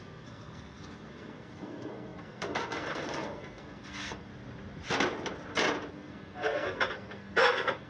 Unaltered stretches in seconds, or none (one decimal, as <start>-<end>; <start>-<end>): 4.3-5.9